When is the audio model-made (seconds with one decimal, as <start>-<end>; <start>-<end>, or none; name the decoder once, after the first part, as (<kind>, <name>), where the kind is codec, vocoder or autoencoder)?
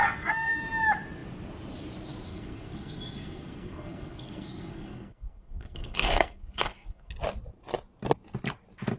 0.0-0.6 (codec, SNAC); 2.3-7.1